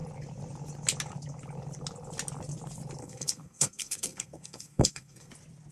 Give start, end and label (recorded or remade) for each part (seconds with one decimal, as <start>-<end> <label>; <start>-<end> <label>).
0.0-3.0 recorded; 3.0-5.3 remade; 5.3-5.7 recorded